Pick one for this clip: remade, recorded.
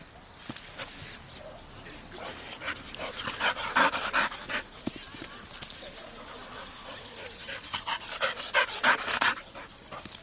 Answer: recorded